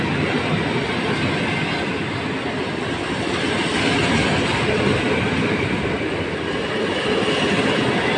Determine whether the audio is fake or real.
real